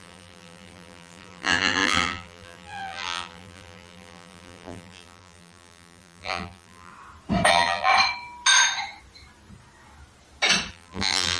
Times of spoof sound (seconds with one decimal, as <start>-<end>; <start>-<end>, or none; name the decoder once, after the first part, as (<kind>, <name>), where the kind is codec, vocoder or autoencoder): 0.0-6.9 (vocoder, BigVGAN v2); 7.5-7.9; 10.7-11.4